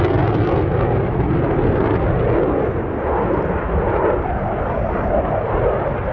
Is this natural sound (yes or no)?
yes